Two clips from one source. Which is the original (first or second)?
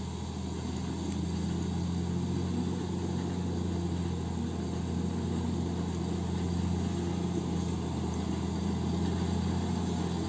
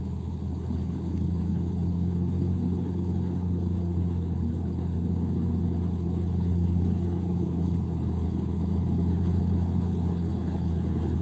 first